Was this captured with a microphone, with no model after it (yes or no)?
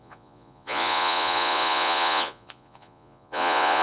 no